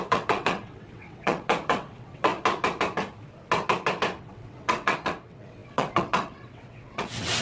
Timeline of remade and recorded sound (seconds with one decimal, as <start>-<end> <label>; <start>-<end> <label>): 0.0-2.3 remade; 2.3-4.2 recorded; 4.2-7.4 remade